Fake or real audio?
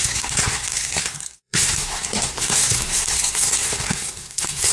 fake